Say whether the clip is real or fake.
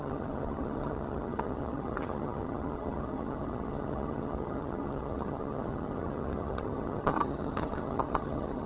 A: fake